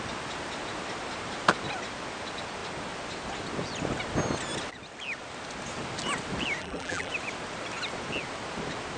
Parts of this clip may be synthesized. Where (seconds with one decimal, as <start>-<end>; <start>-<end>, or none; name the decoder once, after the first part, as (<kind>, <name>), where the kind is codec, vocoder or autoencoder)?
6.6-7.1 (vocoder, BigVGAN v2)